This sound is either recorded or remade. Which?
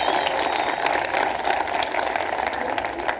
recorded